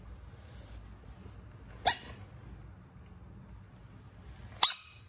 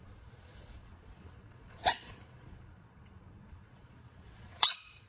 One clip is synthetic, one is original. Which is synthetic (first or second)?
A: second